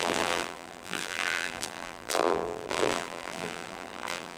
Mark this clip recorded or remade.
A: remade